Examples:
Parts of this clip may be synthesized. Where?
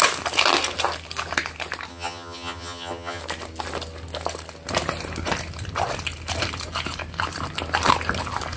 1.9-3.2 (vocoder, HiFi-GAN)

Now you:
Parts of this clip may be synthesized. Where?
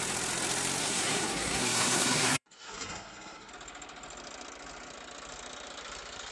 0.8-3.5 (codec, SNAC)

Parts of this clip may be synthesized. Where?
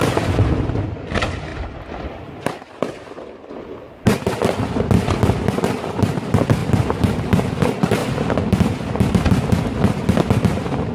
none